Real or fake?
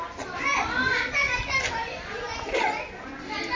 real